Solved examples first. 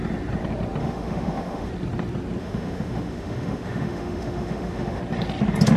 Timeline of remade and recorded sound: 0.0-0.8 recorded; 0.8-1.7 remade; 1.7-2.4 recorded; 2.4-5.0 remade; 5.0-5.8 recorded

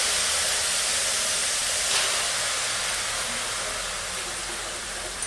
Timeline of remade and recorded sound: 0.0-5.3 recorded

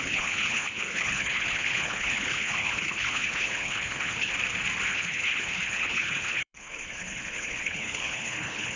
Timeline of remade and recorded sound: 0.0-4.3 remade; 4.3-4.9 recorded; 4.9-8.8 remade

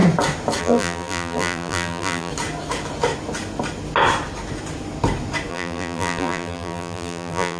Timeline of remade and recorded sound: 0.0-0.6 recorded; 0.6-2.3 remade; 2.3-5.5 recorded; 5.5-7.6 remade

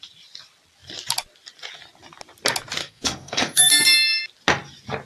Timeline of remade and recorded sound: 0.0-2.8 recorded; 2.8-4.2 remade; 4.2-5.1 recorded

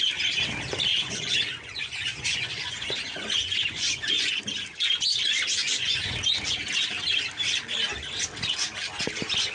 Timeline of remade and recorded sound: 0.0-0.9 recorded; 0.9-4.4 remade; 4.4-5.6 recorded; 5.6-6.2 remade; 6.2-9.5 recorded

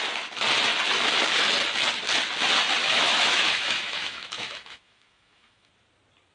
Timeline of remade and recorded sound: 0.0-2.8 recorded; 2.8-5.7 remade; 5.7-6.3 recorded